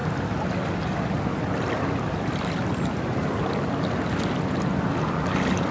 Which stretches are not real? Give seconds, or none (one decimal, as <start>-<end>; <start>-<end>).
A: none